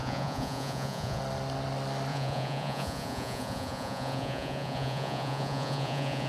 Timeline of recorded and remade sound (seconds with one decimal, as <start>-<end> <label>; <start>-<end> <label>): 0.0-1.2 remade; 1.2-2.1 recorded; 2.1-6.3 remade